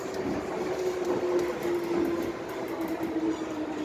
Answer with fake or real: real